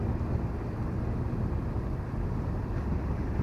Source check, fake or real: real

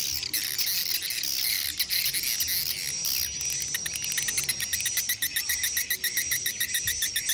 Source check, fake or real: real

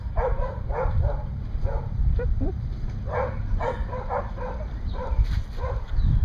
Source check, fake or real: fake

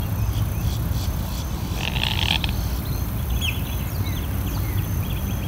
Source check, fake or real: real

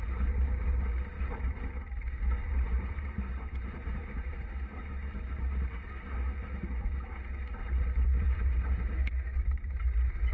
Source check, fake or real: fake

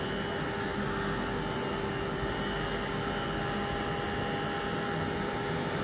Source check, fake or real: real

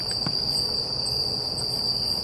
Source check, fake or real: real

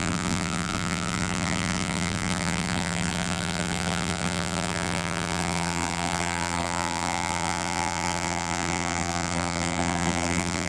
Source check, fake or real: fake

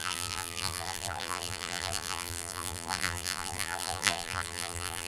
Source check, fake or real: fake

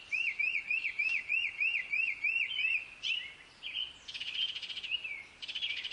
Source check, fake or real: fake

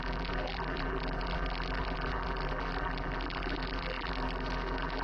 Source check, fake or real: fake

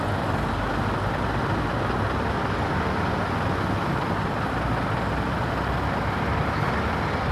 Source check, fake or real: real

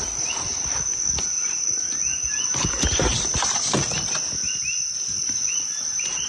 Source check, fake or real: real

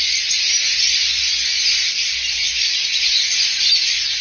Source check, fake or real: real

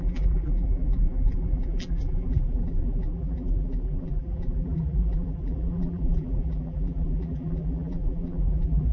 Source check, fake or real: fake